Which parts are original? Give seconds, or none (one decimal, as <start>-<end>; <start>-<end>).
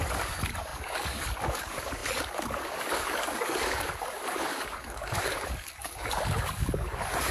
none